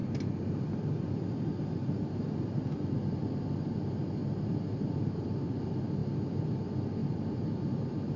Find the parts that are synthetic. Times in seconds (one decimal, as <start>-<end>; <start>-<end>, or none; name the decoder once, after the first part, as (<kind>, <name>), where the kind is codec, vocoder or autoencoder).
0.0-2.6 (vocoder, BigVGAN v2); 4.2-5.6; 7.0-8.2

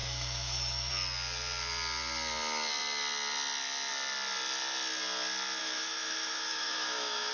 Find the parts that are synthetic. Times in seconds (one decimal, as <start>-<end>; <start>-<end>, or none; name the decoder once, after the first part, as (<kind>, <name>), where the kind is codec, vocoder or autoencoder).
0.0-0.9 (autoencoder, DAC-VAE); 5.6-7.3